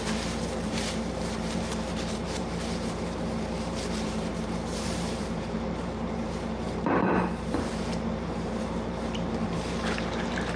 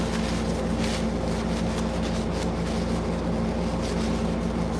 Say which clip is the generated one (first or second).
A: first